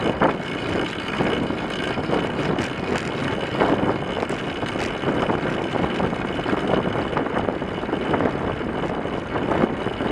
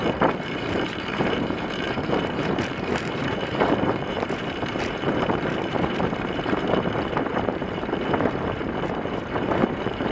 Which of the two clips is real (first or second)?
first